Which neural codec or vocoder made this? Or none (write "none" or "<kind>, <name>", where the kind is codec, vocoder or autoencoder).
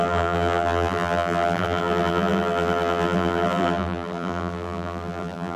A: vocoder, BigVGAN v2